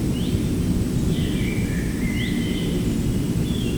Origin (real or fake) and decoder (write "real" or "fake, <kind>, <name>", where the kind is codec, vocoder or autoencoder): real